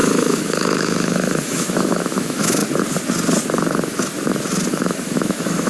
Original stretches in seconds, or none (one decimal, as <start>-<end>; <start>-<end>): 2.6-4.7